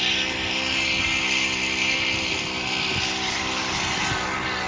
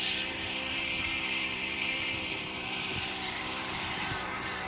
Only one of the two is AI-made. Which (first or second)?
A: second